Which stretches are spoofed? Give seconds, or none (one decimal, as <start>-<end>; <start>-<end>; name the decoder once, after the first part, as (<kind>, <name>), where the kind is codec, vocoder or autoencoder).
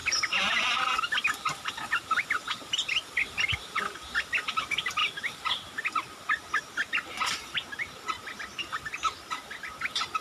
0.0-5.0 (vocoder, BigVGAN v2); 6.9-10.2